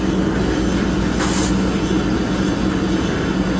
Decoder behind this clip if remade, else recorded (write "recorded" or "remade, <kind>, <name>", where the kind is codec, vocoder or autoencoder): recorded